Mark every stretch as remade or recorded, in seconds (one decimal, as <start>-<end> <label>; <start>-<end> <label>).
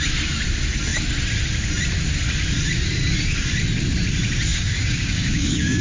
0.0-4.5 recorded; 4.5-5.8 remade